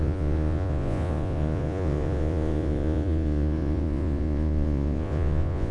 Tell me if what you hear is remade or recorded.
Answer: remade